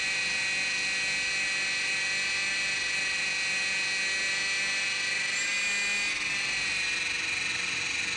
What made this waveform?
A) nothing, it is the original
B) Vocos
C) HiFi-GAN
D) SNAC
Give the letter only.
A